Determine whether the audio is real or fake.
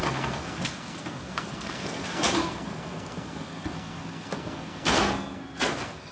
fake